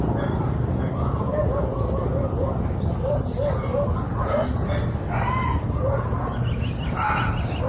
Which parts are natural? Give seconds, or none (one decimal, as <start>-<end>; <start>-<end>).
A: 0.0-7.7

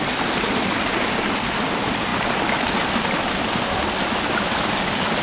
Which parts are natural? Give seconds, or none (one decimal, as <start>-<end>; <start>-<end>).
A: 0.0-5.2

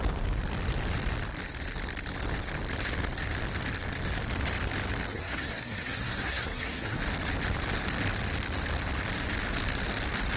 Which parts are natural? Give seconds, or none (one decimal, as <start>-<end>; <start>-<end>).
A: 0.0-5.1; 7.0-10.4

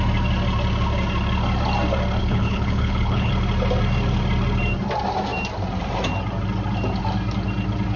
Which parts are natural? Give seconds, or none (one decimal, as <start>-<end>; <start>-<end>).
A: 0.0-2.2; 3.3-8.0

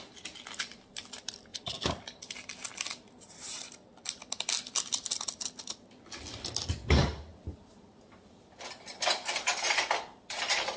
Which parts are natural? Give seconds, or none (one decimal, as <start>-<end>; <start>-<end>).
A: 0.0-7.3

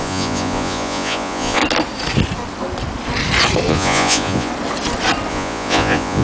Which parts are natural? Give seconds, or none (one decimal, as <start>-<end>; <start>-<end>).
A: 1.6-3.7; 4.5-5.3

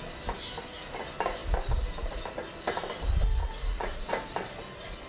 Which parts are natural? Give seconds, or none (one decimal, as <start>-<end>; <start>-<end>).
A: 0.0-3.4; 4.1-5.1

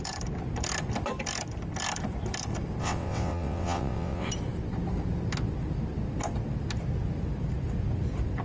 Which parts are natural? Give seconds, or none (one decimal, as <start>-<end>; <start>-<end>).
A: 0.0-2.8; 4.3-8.4